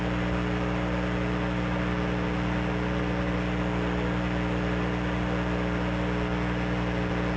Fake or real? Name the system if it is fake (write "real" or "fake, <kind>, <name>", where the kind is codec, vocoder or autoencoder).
real